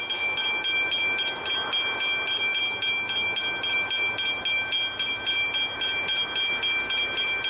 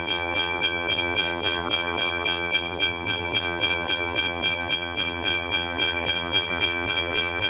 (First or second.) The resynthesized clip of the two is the second